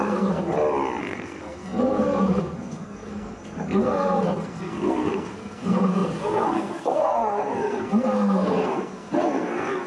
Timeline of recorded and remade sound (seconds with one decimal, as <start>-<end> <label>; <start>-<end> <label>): 0.0-0.5 remade; 0.5-1.0 recorded; 1.0-9.9 remade